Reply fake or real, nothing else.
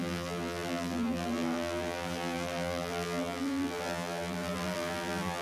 fake